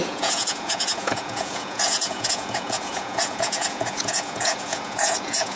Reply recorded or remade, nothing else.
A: remade